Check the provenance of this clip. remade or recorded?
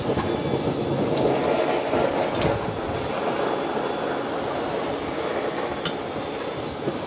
recorded